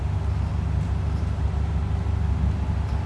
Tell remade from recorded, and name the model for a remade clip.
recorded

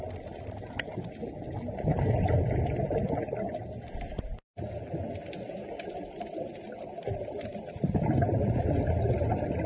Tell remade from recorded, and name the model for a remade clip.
recorded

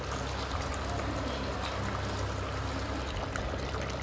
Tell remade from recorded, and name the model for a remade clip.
recorded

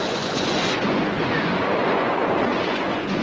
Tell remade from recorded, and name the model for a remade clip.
remade, vocoder, Vocos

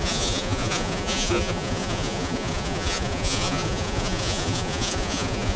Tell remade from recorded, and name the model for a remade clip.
remade, vocoder, Vocos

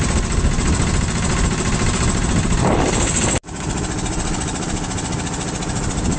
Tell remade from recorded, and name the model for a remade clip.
recorded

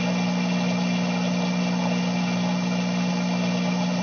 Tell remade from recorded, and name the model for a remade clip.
recorded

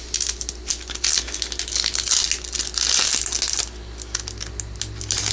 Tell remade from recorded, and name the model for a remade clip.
recorded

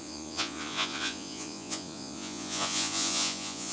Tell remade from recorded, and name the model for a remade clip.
remade, vocoder, Vocos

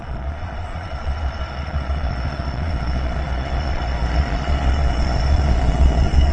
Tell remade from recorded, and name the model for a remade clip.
remade, vocoder, Vocos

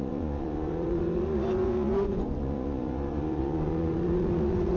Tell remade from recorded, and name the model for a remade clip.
remade, vocoder, Vocos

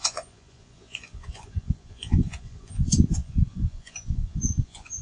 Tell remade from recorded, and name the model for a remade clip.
remade, vocoder, Vocos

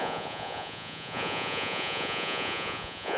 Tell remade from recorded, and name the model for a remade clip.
remade, vocoder, Vocos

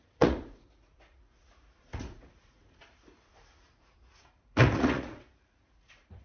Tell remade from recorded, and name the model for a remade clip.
remade, vocoder, Vocos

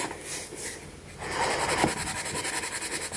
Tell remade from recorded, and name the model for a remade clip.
recorded